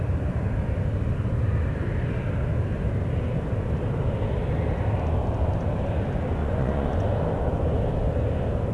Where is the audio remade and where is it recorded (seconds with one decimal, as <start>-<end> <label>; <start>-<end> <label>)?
0.0-6.4 recorded; 6.4-7.1 remade; 7.1-8.7 recorded